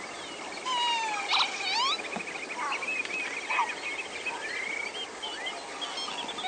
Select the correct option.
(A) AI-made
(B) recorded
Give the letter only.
B